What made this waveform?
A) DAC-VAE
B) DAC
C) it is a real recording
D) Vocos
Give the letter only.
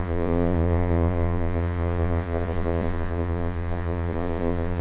D